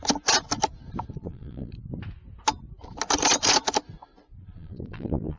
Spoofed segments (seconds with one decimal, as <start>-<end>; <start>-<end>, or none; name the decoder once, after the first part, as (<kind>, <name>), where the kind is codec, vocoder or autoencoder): 1.2-1.7 (vocoder, Vocos); 4.4-5.4